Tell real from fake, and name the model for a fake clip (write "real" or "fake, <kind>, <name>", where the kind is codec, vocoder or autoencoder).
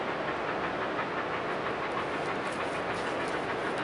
real